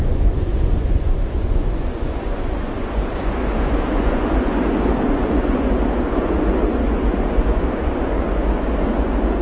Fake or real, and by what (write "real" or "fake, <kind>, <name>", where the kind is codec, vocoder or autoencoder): fake, vocoder, Vocos